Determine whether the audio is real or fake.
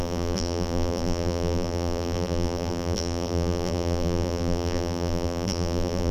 fake